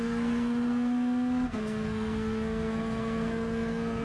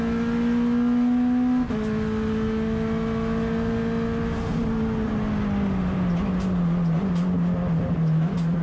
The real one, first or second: second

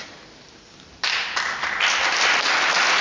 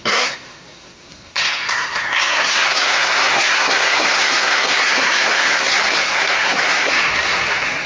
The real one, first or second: first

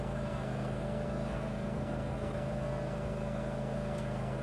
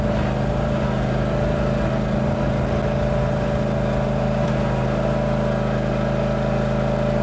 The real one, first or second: second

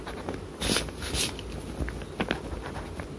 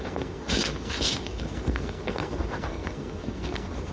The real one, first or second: first